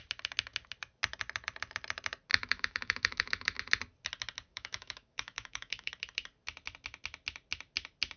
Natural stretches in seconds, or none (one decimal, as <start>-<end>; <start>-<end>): 0.0-2.3; 3.6-4.5; 5.9-8.2